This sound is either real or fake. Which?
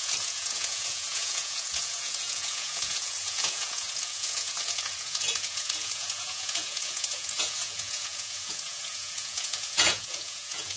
fake